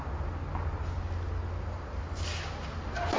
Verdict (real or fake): real